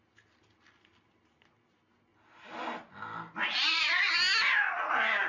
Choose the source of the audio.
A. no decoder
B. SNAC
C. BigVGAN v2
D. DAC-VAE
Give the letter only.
A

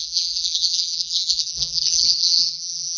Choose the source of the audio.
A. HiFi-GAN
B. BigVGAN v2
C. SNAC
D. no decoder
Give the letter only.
B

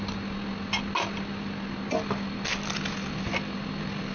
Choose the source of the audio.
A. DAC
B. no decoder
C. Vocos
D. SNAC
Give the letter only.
B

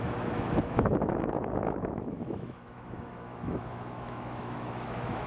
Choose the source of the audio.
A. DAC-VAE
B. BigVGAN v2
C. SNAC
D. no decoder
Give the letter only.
A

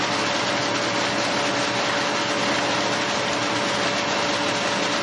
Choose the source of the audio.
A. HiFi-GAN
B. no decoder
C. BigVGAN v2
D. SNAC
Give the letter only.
B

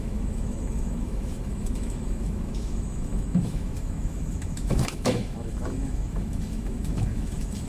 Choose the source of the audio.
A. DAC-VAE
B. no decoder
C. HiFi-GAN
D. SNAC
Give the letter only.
A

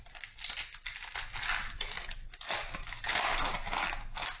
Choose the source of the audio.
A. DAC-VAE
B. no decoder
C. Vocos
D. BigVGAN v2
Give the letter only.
B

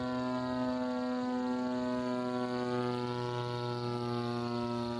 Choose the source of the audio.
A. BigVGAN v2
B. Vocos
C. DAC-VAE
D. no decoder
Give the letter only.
D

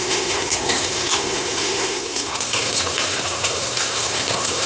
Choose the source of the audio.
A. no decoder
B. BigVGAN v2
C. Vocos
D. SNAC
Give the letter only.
D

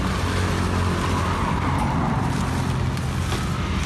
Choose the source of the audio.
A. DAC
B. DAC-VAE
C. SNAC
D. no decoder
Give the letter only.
D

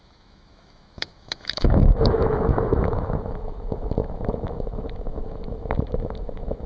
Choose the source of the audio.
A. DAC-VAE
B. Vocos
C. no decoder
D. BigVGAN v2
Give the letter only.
A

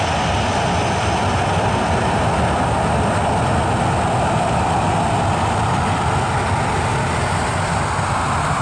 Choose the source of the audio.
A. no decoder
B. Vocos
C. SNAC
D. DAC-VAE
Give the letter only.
A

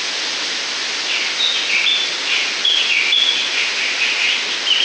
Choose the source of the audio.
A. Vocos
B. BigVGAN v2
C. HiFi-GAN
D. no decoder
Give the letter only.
D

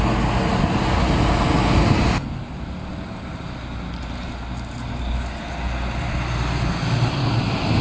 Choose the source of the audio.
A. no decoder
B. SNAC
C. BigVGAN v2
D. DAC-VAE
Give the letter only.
A